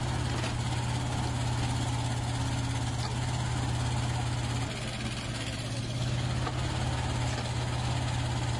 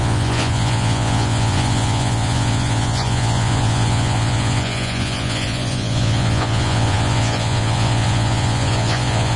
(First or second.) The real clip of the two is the first